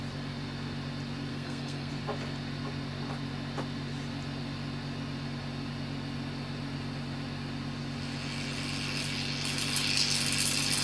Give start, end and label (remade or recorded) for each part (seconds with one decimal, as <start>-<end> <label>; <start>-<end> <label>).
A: 0.0-1.3 recorded; 1.3-1.9 remade; 1.9-10.8 recorded

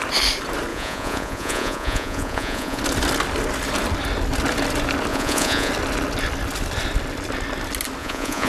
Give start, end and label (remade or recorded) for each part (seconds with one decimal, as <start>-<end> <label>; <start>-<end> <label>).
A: 0.0-0.7 recorded; 0.7-2.8 remade; 2.8-5.1 recorded; 5.1-5.7 remade; 5.7-8.0 recorded; 8.0-8.5 remade

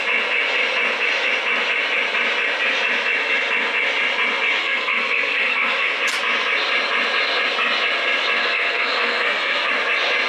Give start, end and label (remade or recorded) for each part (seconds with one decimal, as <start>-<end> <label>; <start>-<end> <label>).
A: 0.0-4.6 recorded; 4.6-6.0 remade; 6.0-8.4 recorded; 8.4-9.7 remade; 9.7-10.3 recorded

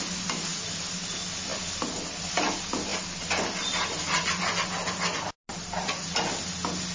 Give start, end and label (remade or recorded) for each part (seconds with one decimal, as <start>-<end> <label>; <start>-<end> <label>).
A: 0.0-6.9 recorded

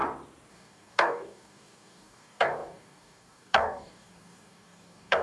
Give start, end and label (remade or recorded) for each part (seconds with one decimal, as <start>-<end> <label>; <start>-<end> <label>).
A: 0.0-0.5 recorded; 0.5-5.2 remade

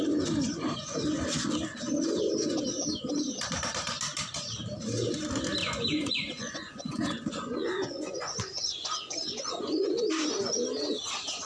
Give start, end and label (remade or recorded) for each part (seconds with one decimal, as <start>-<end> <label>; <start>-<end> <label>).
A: 0.0-5.6 recorded; 5.6-10.1 remade; 10.1-11.5 recorded

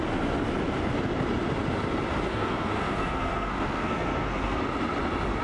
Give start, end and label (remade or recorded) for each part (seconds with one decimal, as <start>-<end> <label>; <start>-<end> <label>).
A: 0.0-2.3 recorded; 2.3-4.6 remade; 4.6-5.4 recorded